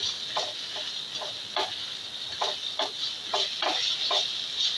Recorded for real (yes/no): yes